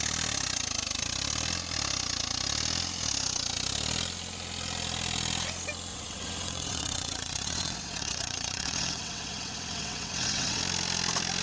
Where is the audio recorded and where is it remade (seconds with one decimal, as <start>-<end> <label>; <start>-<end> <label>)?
0.0-5.9 recorded; 5.9-10.6 remade; 10.6-11.4 recorded